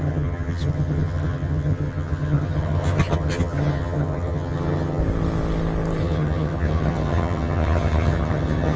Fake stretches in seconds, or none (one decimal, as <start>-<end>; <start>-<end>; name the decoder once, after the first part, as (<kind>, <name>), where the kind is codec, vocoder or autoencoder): 0.0-5.0 (vocoder, HiFi-GAN); 6.0-8.8